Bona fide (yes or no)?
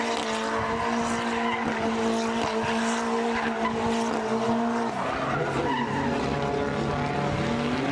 yes